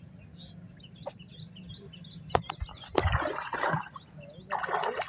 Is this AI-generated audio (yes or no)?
no